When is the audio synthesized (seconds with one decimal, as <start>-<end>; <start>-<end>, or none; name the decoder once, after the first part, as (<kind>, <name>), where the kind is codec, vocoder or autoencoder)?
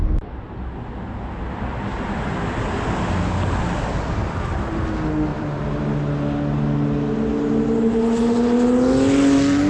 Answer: 5.3-5.8 (vocoder, BigVGAN v2)